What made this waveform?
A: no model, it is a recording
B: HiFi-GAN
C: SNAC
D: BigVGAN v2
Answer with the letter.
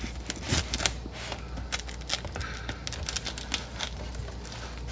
A